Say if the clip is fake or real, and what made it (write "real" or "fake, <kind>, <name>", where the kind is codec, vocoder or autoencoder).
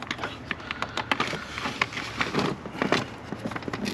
real